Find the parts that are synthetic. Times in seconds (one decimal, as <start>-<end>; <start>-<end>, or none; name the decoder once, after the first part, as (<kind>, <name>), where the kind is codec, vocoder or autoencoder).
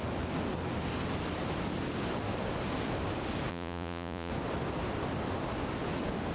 3.5-4.3 (vocoder, Vocos)